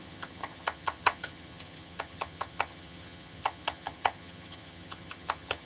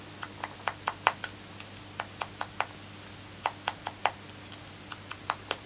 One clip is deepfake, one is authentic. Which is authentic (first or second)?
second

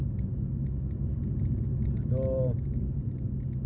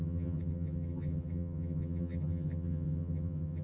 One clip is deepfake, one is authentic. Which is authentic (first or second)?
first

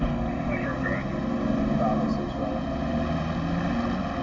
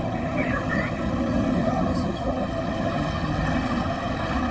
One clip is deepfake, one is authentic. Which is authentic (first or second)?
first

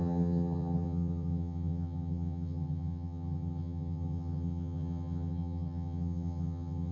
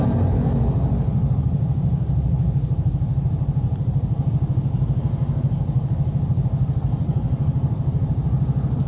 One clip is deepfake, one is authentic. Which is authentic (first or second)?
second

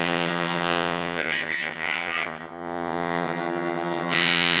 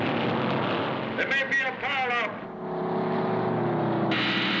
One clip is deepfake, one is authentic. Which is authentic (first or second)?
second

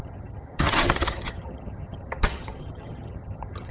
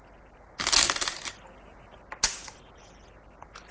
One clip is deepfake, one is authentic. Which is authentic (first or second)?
second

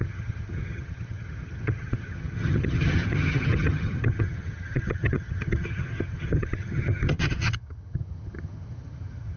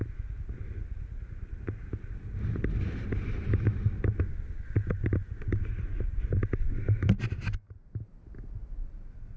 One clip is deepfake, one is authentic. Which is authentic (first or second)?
second